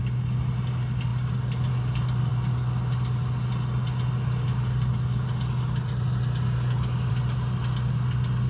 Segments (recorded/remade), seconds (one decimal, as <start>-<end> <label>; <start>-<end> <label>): 0.0-8.5 recorded